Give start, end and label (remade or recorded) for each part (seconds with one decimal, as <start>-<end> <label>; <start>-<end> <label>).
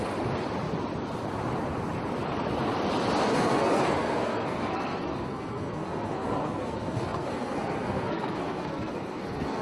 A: 0.0-3.2 recorded; 3.2-9.6 remade